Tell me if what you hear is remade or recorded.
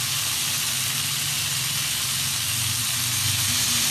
recorded